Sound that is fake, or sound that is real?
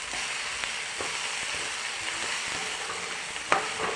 real